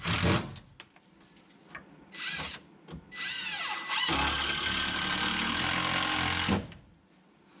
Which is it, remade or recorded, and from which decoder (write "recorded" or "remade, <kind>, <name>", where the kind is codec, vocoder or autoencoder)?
recorded